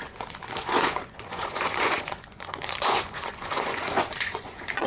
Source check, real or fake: fake